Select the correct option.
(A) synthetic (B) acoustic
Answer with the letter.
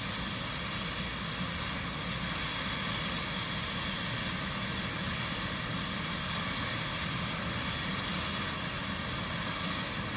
B